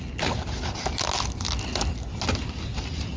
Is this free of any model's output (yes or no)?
yes